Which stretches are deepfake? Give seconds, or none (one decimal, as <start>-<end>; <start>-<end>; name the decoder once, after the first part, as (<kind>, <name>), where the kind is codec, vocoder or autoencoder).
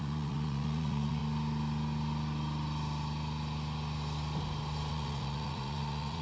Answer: 0.0-1.2 (vocoder, Vocos); 4.9-6.2